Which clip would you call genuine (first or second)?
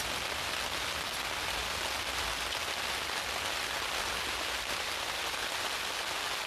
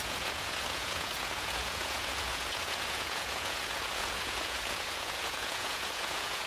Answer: first